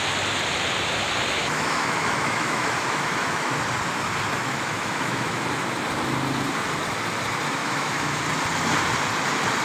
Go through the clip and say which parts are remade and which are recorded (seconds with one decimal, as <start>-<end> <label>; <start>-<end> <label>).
0.0-1.4 recorded; 1.4-3.5 remade; 3.5-4.4 recorded; 4.4-5.4 remade; 5.4-7.6 recorded; 7.6-8.2 remade; 8.2-9.6 recorded

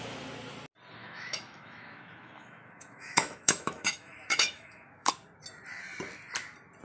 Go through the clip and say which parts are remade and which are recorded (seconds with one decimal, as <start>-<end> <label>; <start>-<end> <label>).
0.0-1.0 recorded; 1.0-5.1 remade; 5.1-6.8 recorded

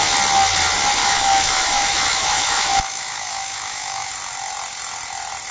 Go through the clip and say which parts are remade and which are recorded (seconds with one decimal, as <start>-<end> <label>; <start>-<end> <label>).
0.0-1.0 recorded; 1.0-4.1 remade; 4.1-5.5 recorded